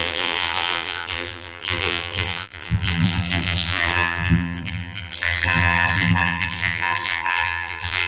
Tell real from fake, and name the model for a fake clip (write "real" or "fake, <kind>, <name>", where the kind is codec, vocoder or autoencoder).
fake, vocoder, BigVGAN v2